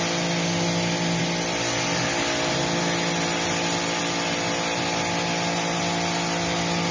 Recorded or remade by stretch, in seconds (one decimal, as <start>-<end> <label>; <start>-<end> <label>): 0.0-6.9 recorded